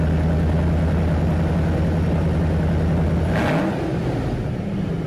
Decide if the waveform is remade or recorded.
recorded